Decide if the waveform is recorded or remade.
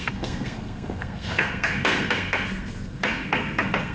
remade